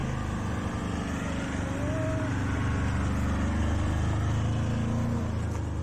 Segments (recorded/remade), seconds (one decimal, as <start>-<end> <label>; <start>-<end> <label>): 0.0-5.8 recorded